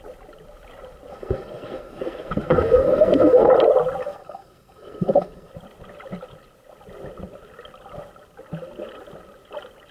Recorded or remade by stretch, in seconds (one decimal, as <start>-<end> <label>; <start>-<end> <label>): 0.0-1.1 recorded; 1.1-3.5 remade; 3.5-4.0 recorded; 4.0-5.5 remade; 5.5-9.9 recorded